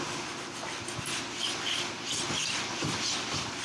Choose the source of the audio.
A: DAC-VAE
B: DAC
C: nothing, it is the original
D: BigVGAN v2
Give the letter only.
C